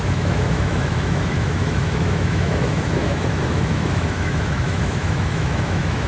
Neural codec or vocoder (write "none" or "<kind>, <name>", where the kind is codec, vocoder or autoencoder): autoencoder, DAC-VAE